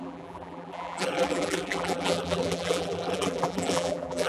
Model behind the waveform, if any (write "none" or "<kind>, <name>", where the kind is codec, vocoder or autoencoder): vocoder, BigVGAN v2